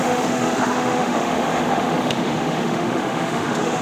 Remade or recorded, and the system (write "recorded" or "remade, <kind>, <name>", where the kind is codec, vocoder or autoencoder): remade, autoencoder, DAC-VAE